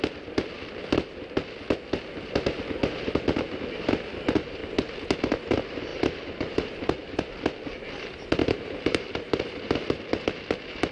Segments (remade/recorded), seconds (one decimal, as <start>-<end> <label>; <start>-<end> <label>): 0.0-8.4 recorded; 8.4-9.7 remade; 9.7-10.9 recorded